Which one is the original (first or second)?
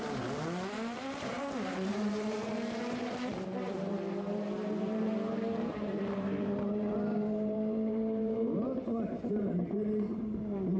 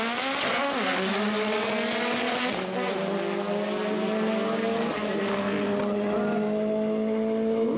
second